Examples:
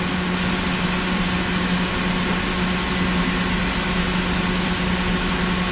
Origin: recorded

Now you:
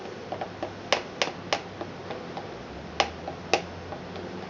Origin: recorded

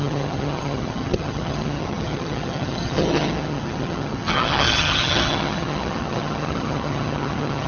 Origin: remade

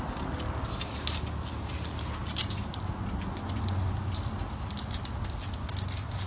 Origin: recorded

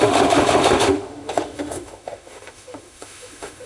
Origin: remade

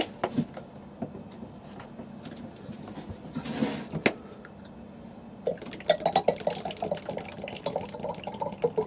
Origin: recorded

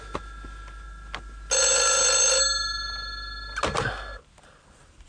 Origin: recorded